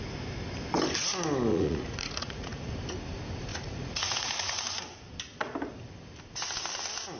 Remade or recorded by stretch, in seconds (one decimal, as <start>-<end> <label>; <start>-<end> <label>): 0.0-1.5 recorded; 1.5-2.7 remade; 2.7-3.5 recorded; 3.5-4.6 remade; 4.6-7.2 recorded